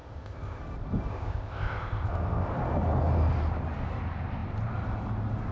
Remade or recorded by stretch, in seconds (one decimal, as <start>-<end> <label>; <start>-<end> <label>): 0.0-0.6 remade; 0.6-1.1 recorded; 1.1-2.5 remade; 2.5-5.5 recorded